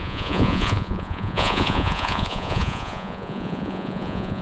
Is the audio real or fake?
fake